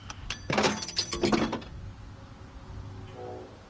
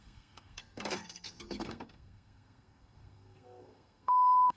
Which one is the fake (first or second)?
second